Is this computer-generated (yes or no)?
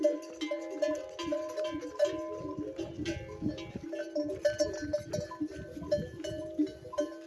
no